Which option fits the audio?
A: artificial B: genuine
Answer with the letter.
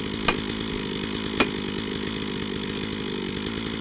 B